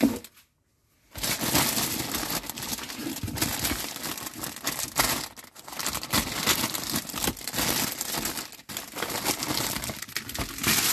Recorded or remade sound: recorded